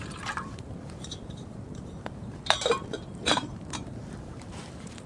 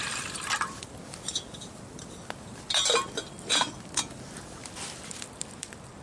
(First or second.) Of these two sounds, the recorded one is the second